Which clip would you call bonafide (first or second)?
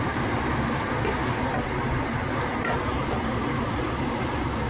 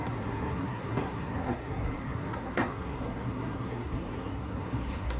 first